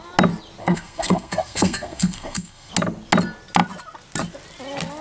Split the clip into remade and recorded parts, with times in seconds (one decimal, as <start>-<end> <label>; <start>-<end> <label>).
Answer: 0.0-0.6 recorded; 0.6-2.7 remade; 2.7-5.0 recorded